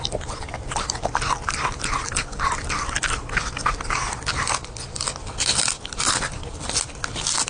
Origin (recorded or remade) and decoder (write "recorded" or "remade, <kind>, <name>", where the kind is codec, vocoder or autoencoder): recorded